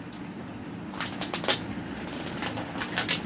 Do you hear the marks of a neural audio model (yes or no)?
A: no